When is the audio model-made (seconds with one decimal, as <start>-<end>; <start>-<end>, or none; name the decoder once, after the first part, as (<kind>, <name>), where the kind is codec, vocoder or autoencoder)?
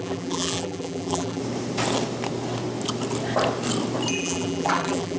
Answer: 0.0-1.4 (vocoder, BigVGAN v2); 4.1-5.2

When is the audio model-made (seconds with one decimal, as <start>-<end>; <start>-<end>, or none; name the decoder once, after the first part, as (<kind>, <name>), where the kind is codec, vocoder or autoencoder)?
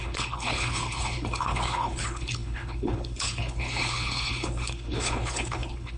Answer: 0.0-6.0 (codec, HILCodec)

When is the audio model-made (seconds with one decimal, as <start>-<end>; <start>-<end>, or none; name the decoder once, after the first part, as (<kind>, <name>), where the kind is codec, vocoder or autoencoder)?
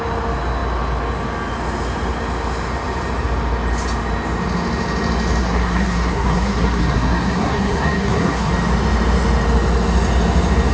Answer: 5.4-8.5 (codec, SNAC)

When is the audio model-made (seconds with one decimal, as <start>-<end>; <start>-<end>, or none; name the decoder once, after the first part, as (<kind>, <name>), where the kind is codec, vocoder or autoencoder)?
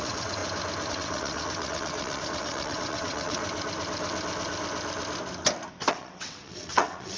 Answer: 0.0-0.4 (vocoder, WaveNeXt); 0.9-3.4; 5.9-7.2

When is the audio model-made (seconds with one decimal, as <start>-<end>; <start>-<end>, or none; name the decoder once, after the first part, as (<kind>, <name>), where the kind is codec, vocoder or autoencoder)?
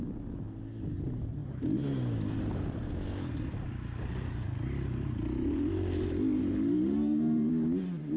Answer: 6.4-7.5 (autoencoder, DAC-VAE)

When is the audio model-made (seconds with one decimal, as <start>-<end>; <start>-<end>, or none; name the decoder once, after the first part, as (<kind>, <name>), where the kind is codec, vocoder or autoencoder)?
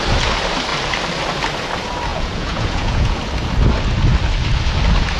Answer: 2.1-3.2 (vocoder, Vocos)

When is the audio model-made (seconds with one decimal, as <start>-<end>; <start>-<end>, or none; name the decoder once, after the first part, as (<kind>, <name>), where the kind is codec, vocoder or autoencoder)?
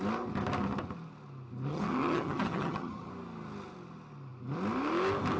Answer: 1.7-3.1 (vocoder, HiFi-GAN)